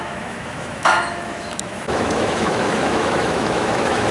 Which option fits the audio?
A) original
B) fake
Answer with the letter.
B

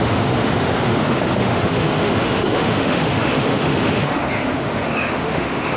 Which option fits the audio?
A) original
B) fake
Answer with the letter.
B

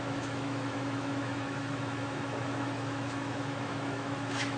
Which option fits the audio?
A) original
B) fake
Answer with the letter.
B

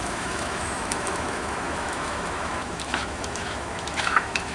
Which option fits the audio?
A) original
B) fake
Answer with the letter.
B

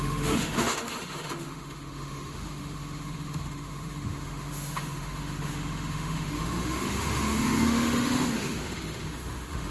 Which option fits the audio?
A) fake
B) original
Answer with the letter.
A